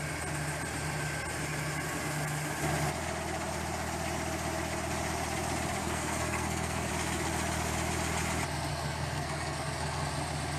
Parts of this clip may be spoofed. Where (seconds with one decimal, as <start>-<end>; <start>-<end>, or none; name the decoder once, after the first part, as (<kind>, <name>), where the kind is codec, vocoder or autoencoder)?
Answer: 5.8-6.9 (codec, SNAC); 8.7-10.1